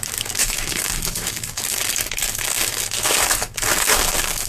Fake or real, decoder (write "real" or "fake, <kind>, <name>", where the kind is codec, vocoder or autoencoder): fake, codec, DAC